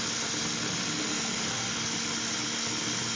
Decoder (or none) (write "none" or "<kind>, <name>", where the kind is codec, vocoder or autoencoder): none